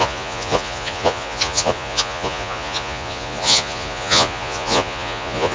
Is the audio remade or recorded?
remade